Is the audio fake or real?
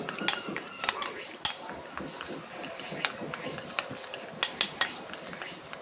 real